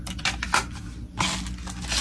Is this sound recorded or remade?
recorded